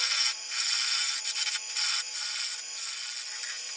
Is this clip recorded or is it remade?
recorded